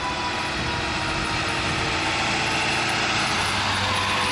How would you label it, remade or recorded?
recorded